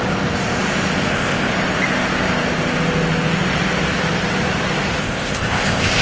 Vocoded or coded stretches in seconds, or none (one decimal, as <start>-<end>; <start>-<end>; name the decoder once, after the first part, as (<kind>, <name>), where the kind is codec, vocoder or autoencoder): 1.1-1.5 (codec, ZipCodec); 5.0-6.0